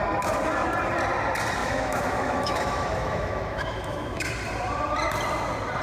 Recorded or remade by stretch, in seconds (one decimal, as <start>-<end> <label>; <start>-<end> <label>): 0.0-1.6 recorded; 1.6-4.3 remade; 4.3-5.8 recorded